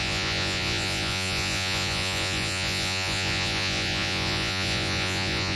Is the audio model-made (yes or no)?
yes